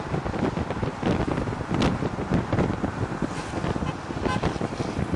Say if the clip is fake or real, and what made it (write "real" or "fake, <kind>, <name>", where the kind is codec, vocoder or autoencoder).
real